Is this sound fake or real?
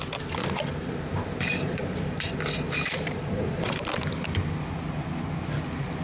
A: fake